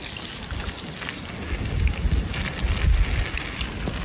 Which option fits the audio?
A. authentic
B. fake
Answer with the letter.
A